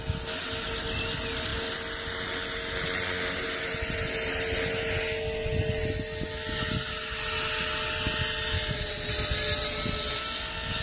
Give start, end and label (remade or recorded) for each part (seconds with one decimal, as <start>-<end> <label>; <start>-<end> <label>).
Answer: 0.0-10.8 recorded